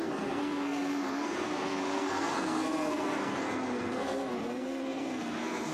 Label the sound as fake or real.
fake